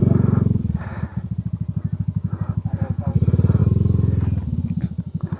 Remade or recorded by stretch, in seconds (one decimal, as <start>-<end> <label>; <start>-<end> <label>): 0.0-5.4 recorded